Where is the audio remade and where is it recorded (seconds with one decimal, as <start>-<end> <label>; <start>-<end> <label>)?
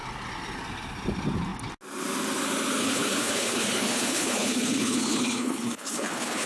0.0-2.8 recorded; 2.8-6.5 remade